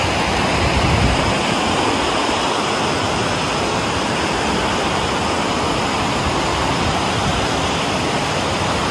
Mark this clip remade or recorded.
recorded